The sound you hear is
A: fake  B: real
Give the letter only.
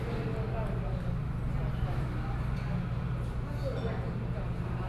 B